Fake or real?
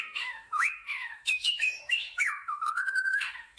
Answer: fake